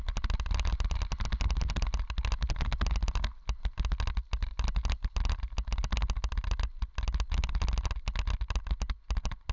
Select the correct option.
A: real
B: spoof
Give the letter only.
A